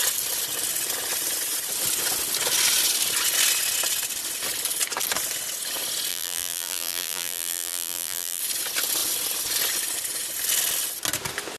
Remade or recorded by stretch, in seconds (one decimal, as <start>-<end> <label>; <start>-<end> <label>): 0.0-6.1 recorded; 6.1-8.4 remade; 8.4-11.6 recorded